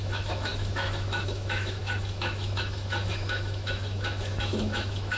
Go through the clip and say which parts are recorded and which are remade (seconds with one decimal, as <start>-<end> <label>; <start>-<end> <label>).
0.0-5.2 remade